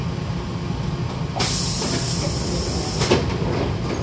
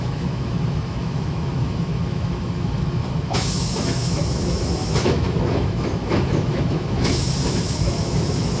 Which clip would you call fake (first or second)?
second